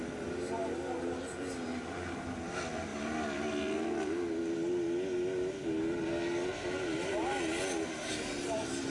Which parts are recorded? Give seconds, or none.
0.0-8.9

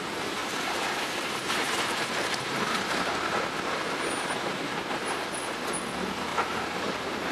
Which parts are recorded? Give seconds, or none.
0.0-0.4; 3.1-6.3

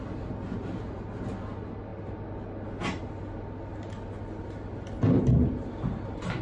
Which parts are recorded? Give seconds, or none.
0.0-6.4

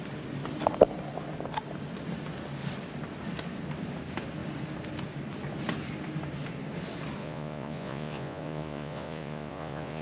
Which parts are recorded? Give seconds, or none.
0.0-7.2

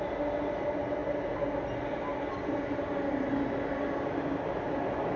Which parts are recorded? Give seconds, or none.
0.0-5.2

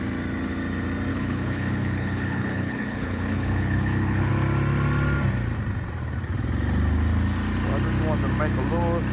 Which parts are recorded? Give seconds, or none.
0.0-1.1; 4.3-9.1

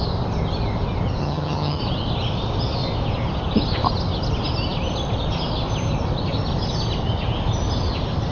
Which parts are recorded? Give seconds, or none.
0.0-1.2; 1.8-8.3